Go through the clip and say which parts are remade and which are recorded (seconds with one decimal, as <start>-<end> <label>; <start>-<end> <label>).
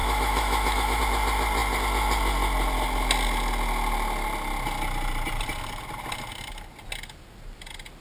0.0-1.0 remade; 1.0-8.0 recorded